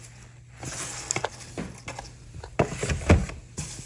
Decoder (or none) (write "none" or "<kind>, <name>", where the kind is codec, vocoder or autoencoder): none